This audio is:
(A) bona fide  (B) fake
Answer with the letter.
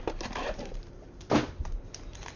B